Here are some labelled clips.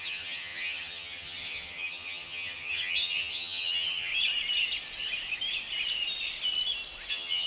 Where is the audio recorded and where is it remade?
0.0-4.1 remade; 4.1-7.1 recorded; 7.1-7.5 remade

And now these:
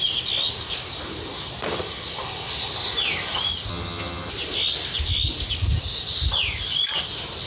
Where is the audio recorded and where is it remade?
0.0-3.7 recorded; 3.7-4.3 remade; 4.3-7.5 recorded

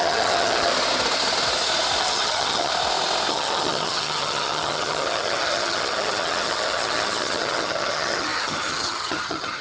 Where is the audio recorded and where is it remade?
0.0-0.7 remade; 0.7-2.0 recorded; 2.0-2.7 remade; 2.7-3.3 recorded; 3.3-9.6 remade

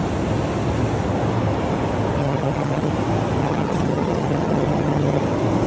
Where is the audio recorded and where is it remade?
0.0-2.2 recorded; 2.2-2.9 remade; 2.9-3.4 recorded; 3.4-5.2 remade; 5.2-5.7 recorded

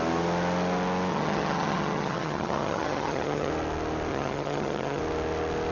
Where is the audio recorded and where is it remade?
0.0-1.1 recorded; 1.1-3.5 remade; 3.5-4.1 recorded; 4.1-5.0 remade; 5.0-5.7 recorded

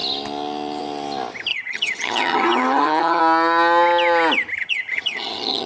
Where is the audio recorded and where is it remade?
0.0-1.5 recorded; 1.5-3.2 remade; 3.2-4.6 recorded; 4.6-5.7 remade